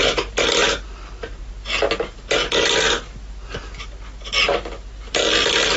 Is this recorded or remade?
recorded